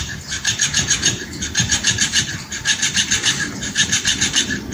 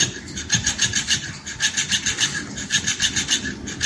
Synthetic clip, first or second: first